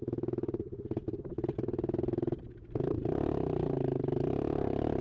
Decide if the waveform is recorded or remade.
recorded